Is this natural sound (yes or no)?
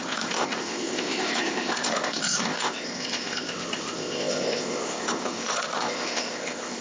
no